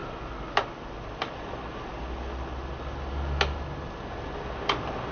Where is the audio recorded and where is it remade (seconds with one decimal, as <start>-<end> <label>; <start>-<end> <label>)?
0.0-5.1 recorded

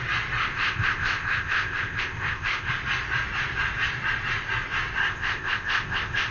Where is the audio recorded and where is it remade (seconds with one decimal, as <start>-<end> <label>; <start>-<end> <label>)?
0.0-0.4 recorded; 0.4-2.7 remade; 2.7-5.0 recorded; 5.0-6.3 remade

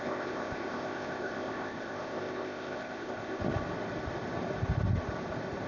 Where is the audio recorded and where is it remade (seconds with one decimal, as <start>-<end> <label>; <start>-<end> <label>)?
0.0-3.4 remade; 3.4-5.7 recorded